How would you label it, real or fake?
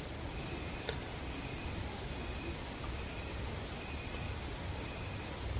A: real